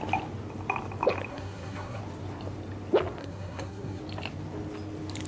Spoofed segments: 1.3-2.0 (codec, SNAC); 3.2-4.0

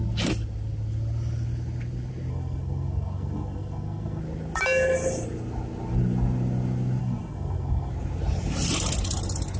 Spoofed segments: 2.3-4.2 (codec, SNAC); 7.0-7.9

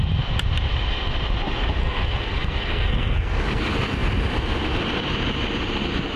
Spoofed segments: 1.8-3.6 (codec, SNAC)

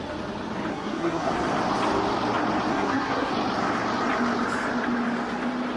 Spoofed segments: 0.7-1.3 (codec, SNAC); 2.7-3.3

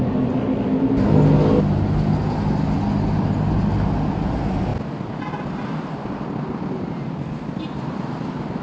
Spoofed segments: none

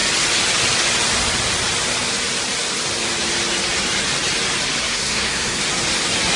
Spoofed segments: 4.8-5.6 (codec, SNAC)

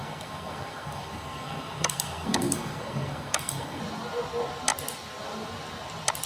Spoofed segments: 0.0-3.8 (codec, SNAC)

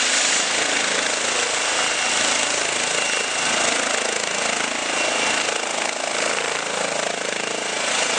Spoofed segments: none